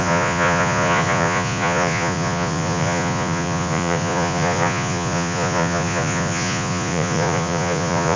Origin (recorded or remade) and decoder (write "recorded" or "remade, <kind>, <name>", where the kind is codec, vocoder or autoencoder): remade, vocoder, Vocos